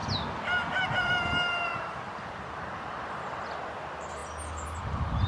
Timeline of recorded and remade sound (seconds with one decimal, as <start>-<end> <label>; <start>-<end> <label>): 0.0-5.3 recorded